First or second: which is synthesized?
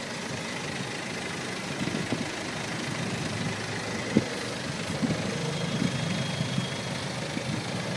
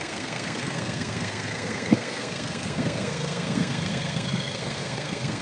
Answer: second